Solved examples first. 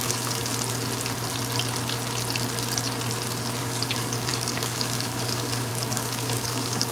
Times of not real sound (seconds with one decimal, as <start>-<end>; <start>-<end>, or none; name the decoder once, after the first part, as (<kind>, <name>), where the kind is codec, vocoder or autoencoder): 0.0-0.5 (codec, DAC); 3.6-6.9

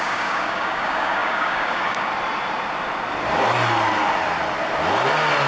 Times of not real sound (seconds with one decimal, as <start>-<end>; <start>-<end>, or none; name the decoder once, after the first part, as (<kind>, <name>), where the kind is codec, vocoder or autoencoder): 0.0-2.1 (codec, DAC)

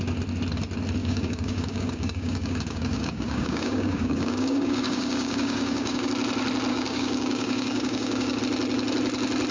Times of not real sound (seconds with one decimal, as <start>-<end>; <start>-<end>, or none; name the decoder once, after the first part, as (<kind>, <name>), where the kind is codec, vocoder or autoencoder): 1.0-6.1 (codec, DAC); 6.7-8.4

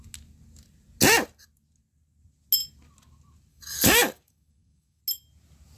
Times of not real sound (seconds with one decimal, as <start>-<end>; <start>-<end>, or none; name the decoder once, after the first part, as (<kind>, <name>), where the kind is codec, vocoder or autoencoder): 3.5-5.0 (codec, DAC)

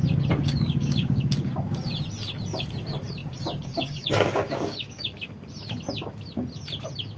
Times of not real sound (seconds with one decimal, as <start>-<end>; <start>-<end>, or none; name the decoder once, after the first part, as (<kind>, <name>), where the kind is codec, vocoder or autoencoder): 0.4-1.5 (codec, DAC); 3.2-5.3

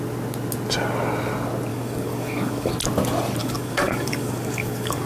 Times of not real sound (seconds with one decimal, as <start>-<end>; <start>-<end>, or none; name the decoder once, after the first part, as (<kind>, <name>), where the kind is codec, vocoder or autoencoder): 1.7-2.7 (codec, DAC); 3.4-5.1

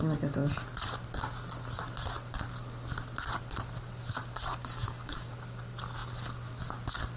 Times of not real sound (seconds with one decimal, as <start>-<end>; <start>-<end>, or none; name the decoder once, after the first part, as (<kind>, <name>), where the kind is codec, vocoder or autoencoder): 4.6-5.3 (codec, DAC)